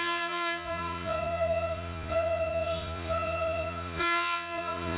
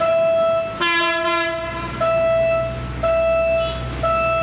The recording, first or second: second